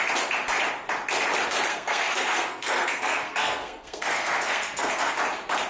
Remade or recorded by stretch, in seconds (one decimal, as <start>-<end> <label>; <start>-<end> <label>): 0.0-1.7 recorded; 1.7-5.1 remade; 5.1-5.7 recorded

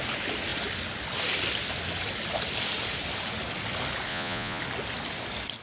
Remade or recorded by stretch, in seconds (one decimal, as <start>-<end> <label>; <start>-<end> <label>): 0.0-4.1 recorded; 4.1-4.6 remade; 4.6-5.6 recorded

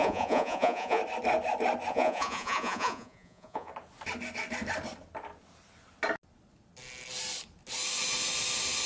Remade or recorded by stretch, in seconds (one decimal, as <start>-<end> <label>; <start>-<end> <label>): 0.0-1.0 remade; 1.0-1.9 recorded; 1.9-3.7 remade; 3.7-8.9 recorded

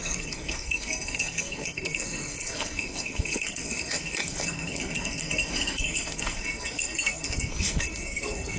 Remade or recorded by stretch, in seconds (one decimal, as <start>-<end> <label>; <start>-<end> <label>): 0.0-8.6 remade

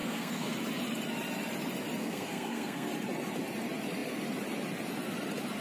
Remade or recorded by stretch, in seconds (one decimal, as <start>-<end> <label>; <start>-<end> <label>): 0.0-0.5 remade; 0.5-2.0 recorded; 2.0-2.9 remade; 2.9-5.6 recorded

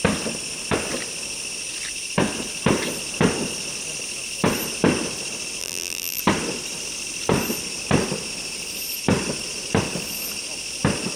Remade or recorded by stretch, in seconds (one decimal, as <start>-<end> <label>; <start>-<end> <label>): 0.0-5.6 recorded; 5.6-6.2 remade; 6.2-11.2 recorded

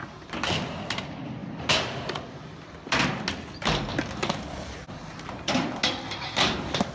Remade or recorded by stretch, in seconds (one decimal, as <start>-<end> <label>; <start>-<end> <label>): 0.0-6.9 recorded